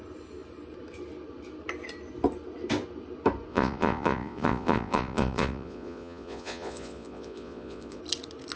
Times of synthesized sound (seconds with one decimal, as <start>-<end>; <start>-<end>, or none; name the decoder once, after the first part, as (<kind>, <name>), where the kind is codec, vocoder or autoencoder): 3.5-8.0 (vocoder, Vocos)